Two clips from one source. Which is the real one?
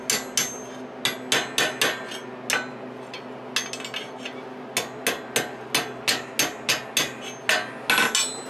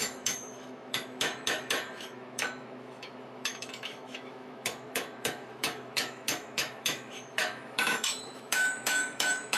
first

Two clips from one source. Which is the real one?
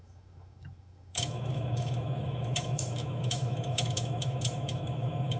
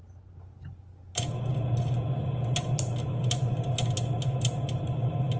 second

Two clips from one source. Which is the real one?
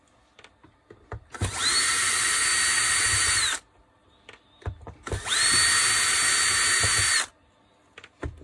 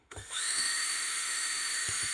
first